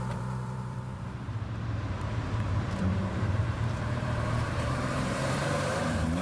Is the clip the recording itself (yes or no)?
no